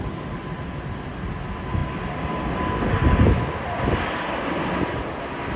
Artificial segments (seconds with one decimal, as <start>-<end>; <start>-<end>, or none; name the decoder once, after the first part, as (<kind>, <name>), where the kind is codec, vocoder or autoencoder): none